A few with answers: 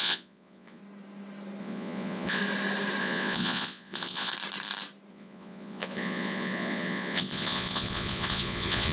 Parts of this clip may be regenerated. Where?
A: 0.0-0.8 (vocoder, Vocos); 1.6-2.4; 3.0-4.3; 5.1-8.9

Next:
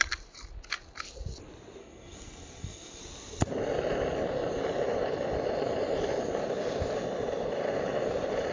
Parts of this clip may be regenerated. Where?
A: 1.8-3.0 (codec, SNAC)

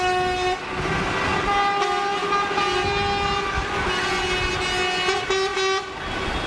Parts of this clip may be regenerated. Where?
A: none

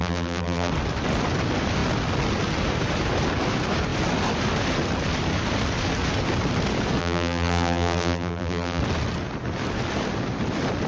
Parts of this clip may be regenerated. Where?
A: 0.0-0.7 (vocoder, BigVGAN v2); 7.0-8.8

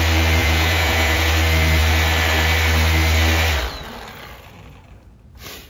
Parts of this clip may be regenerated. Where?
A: 0.4-1.3 (vocoder, Vocos)

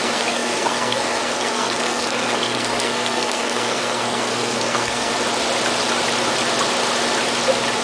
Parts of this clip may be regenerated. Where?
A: 0.0-5.1 (codec, SNAC)

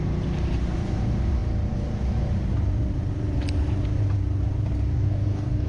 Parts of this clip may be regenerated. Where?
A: 4.9-5.7 (codec, DAC)

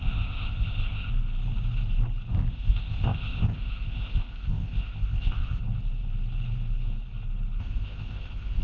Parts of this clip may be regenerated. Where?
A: 0.0-1.1 (codec, ZipCodec); 2.5-5.6; 7.6-8.6